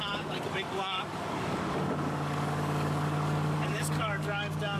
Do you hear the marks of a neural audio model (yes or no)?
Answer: yes